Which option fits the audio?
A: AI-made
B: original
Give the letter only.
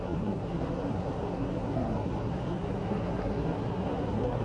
A